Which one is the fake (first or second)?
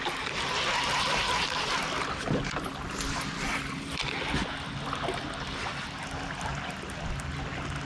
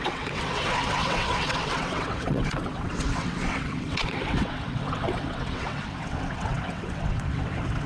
second